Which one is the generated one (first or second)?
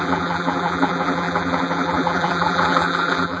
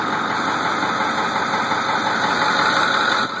first